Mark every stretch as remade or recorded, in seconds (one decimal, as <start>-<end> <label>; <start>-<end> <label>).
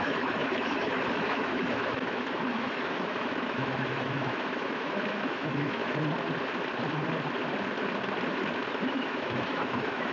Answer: 0.0-5.8 remade; 5.8-8.9 recorded; 8.9-10.1 remade